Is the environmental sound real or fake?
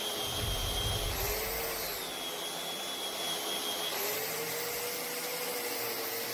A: real